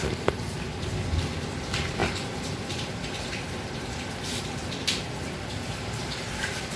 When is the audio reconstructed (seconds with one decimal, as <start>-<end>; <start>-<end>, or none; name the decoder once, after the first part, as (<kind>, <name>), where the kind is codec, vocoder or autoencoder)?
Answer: 0.0-6.8 (vocoder, BigVGAN v2)